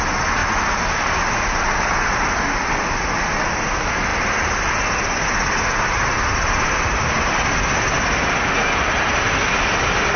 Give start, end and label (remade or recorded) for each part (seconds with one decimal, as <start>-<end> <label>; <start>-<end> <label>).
0.0-10.2 recorded